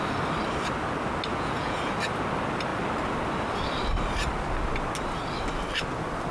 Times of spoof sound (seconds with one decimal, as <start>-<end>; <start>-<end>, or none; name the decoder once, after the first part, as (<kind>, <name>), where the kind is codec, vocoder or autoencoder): 1.3-1.9 (vocoder, Vocos)